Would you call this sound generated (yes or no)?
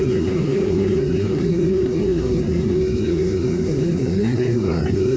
yes